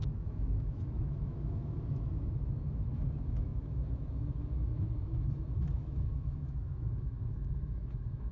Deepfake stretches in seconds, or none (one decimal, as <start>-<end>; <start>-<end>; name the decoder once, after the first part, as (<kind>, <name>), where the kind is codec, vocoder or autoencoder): 0.0-8.3 (autoencoder, DAC-VAE)